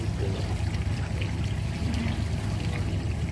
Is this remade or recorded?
recorded